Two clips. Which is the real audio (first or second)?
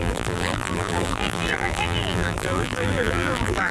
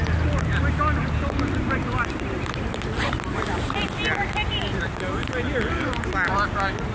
second